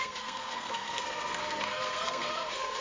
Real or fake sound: fake